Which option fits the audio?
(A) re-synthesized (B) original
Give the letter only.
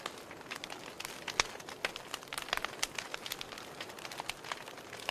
B